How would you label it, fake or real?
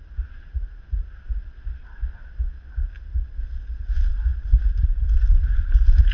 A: real